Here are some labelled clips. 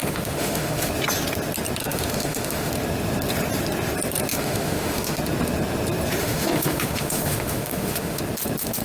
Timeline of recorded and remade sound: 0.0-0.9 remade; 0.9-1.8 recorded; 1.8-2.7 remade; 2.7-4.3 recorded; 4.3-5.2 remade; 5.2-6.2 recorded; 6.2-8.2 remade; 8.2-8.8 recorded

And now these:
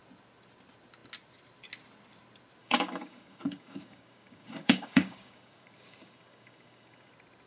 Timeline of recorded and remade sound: 0.0-2.6 recorded; 2.6-7.1 remade; 7.1-7.5 recorded

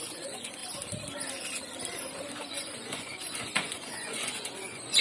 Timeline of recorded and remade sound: 0.0-0.6 remade; 0.6-2.5 recorded; 2.5-5.0 remade

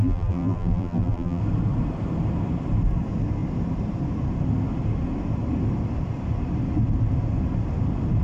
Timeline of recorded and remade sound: 0.0-1.4 remade; 1.4-8.2 recorded

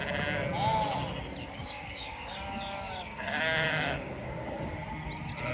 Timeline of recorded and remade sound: 0.0-1.4 recorded; 1.4-4.7 remade; 4.7-5.5 recorded

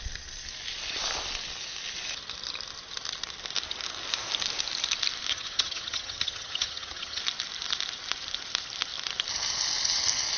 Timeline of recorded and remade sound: 0.0-5.3 recorded; 5.3-7.2 remade; 7.2-10.4 recorded

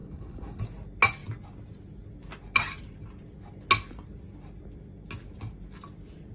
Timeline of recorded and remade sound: 0.0-0.6 remade; 0.6-6.3 recorded

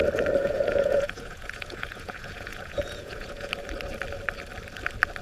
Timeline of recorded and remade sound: 0.0-0.4 recorded; 0.4-3.5 remade; 3.5-5.2 recorded